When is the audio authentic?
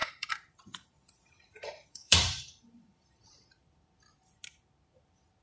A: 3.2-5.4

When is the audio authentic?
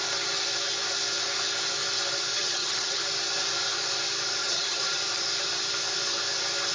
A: 0.0-2.3; 3.0-4.4; 5.0-6.7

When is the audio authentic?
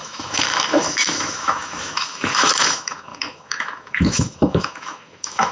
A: none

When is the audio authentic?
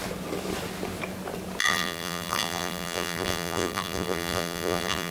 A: 0.0-1.6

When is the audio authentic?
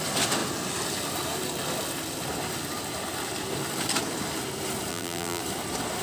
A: 0.0-4.9; 5.4-6.0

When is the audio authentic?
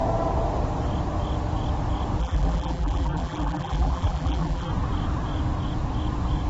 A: 0.0-2.2; 4.7-6.5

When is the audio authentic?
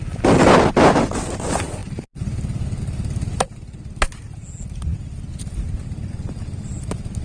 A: 0.0-7.2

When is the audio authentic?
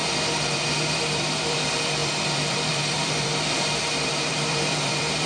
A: 3.3-3.8